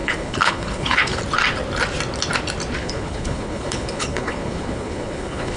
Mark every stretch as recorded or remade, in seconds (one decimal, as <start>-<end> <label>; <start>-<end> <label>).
0.0-1.2 remade; 1.2-2.8 recorded; 2.8-5.6 remade